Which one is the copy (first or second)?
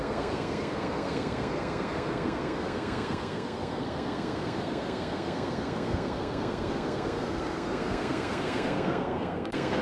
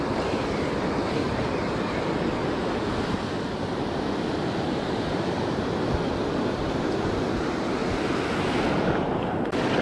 first